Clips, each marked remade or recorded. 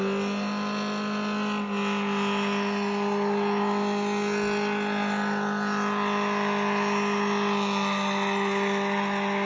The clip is recorded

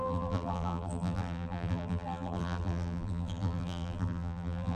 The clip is remade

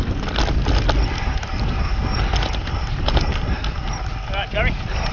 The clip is recorded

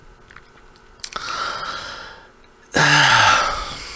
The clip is remade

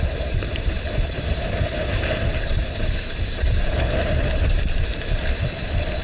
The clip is remade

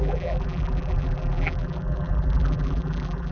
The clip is remade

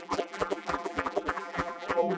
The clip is remade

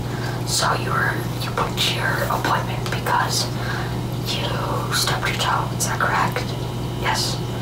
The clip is recorded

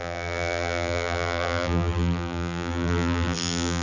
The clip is remade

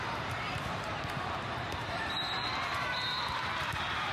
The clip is remade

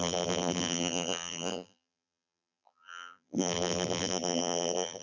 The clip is remade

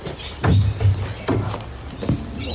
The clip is recorded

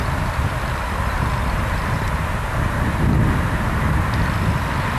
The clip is recorded